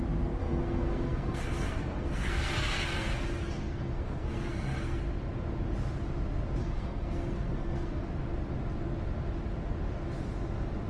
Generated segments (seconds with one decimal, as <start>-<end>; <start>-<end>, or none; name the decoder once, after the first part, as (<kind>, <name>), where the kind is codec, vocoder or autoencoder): 0.4-5.0 (codec, SNAC); 6.6-8.0

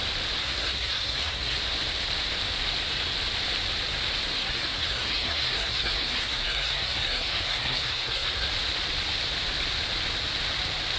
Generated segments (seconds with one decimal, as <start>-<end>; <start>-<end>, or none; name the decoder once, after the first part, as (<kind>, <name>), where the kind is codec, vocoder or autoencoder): 0.4-1.6 (codec, SNAC); 4.3-8.5

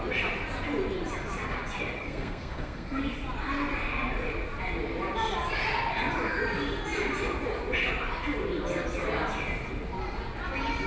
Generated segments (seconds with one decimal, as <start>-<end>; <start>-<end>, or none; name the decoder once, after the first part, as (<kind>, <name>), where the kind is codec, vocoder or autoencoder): 2.0-3.0 (codec, SNAC)